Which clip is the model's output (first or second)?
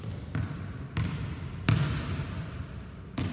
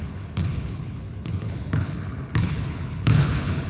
second